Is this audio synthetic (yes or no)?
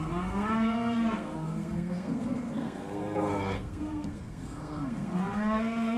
yes